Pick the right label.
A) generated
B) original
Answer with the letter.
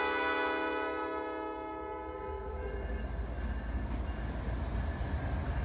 B